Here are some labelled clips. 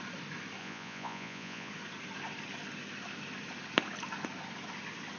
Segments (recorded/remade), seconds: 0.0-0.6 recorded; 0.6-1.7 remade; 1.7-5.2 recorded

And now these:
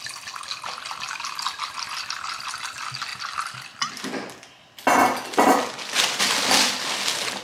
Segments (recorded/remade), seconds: 0.0-7.4 recorded

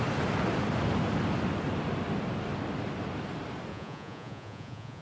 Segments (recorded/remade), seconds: 0.0-3.7 recorded; 3.7-5.0 remade

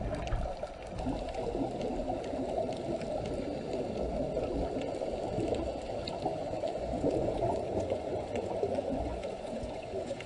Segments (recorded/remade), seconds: 0.0-6.3 recorded; 6.3-10.3 remade

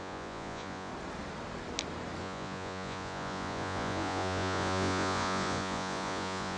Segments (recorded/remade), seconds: 0.0-0.9 remade; 0.9-2.2 recorded; 2.2-6.6 remade